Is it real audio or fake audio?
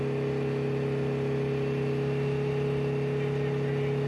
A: real